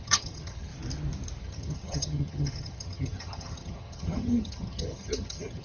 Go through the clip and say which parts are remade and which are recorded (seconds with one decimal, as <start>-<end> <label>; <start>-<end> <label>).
0.0-0.7 remade; 0.7-1.4 recorded; 1.4-5.6 remade